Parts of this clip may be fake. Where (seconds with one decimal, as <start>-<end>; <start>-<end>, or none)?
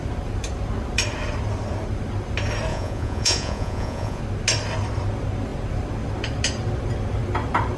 2.7-4.2